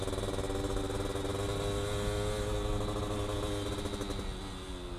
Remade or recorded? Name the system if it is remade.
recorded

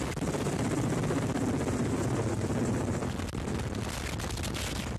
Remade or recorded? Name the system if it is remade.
recorded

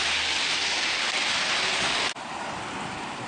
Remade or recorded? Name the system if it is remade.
recorded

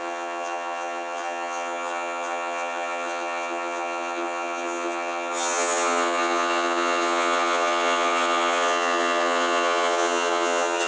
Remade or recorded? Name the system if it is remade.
remade, vocoder, HiFi-GAN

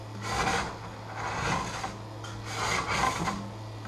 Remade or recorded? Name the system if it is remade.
recorded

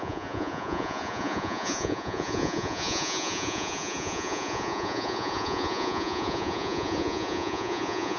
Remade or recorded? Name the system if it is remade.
remade, vocoder, Vocos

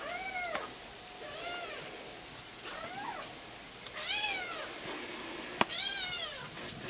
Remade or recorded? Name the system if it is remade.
recorded